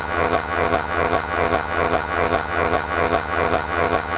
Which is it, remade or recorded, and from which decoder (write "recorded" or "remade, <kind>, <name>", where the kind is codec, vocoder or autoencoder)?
remade, vocoder, HiFi-GAN